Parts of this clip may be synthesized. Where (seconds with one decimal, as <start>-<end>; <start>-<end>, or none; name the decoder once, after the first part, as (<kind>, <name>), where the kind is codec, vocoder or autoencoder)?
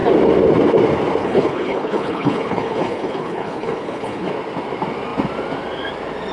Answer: 1.2-4.3 (codec, HILCodec)